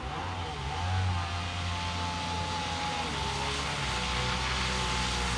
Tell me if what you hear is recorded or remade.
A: recorded